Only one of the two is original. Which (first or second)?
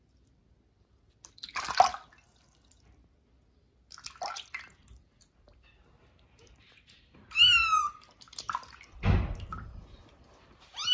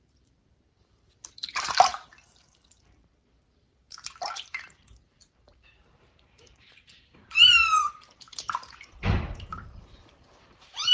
first